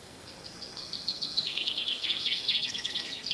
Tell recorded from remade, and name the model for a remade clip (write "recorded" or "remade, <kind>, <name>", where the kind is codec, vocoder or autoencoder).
remade, codec, SNAC